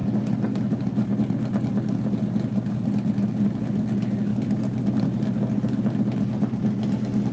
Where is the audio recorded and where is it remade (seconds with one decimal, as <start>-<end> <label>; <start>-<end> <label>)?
0.0-0.8 remade; 0.8-7.3 recorded